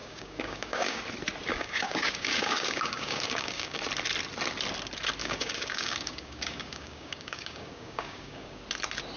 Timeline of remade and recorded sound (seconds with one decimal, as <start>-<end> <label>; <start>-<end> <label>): 0.0-1.0 remade; 1.0-1.5 recorded; 1.5-3.8 remade; 3.8-5.2 recorded; 5.2-8.6 remade; 8.6-9.2 recorded